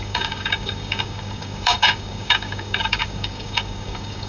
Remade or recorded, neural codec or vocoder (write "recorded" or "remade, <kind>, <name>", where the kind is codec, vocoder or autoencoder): remade, codec, DAC